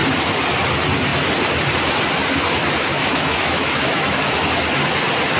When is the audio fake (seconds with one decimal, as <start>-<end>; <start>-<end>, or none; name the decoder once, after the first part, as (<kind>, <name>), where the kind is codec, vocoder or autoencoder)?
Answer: 2.9-4.3 (autoencoder, DAC-VAE)